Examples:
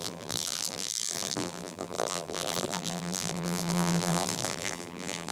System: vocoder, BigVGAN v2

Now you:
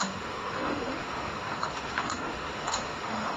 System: autoencoder, DAC-VAE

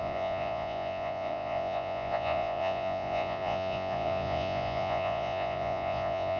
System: vocoder, Vocos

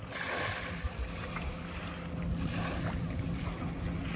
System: none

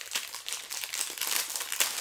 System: vocoder, BigVGAN v2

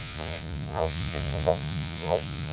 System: vocoder, Vocos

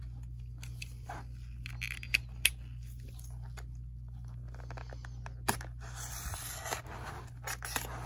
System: none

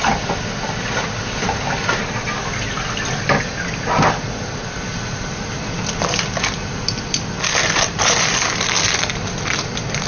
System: none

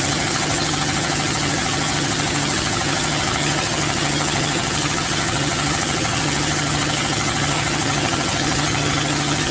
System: vocoder, HiFi-GAN